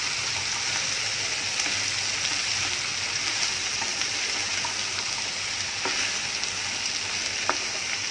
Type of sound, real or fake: real